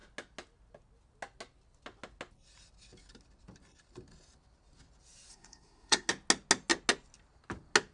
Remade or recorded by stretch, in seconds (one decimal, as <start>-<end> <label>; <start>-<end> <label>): 0.0-5.3 recorded; 5.3-6.1 remade; 6.1-7.9 recorded